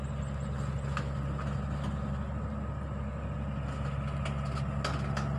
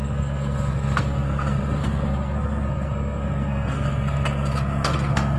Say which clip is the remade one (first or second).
second